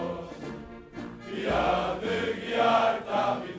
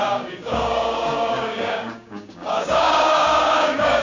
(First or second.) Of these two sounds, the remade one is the second